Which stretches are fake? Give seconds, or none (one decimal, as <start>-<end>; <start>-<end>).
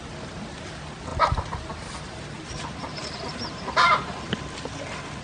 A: 1.1-4.2